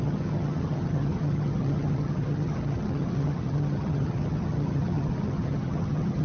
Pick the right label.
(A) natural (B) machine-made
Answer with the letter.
B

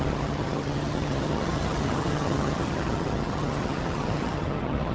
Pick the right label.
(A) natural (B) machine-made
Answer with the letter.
B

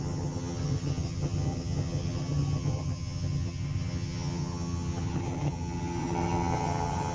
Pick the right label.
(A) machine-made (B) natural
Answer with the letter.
A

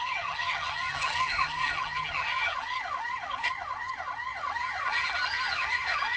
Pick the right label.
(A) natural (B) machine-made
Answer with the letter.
B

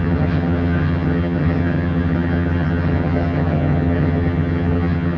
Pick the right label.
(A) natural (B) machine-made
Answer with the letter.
B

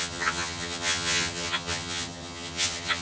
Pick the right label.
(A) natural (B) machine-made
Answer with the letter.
B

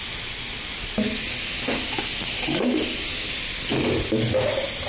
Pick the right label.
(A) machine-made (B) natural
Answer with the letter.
B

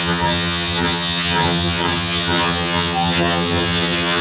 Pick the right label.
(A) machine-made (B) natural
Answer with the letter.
A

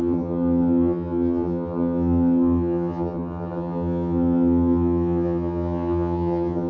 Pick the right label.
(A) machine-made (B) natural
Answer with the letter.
A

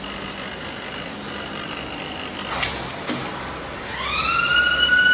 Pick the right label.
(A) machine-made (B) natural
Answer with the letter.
B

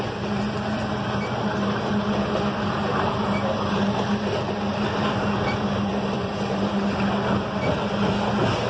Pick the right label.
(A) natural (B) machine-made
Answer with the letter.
A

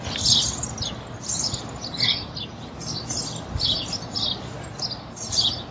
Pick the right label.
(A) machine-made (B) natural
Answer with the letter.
B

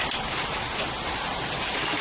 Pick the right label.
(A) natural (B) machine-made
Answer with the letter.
A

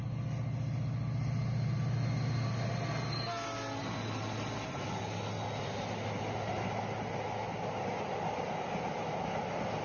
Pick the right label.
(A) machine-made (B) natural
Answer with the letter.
B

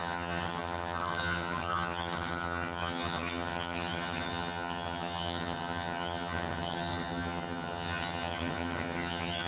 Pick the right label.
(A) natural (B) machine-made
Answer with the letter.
B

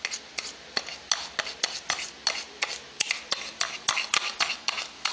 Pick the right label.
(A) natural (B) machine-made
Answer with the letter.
A